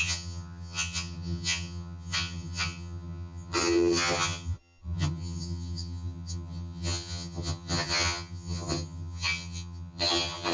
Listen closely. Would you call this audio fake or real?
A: fake